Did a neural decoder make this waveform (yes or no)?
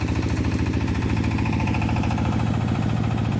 yes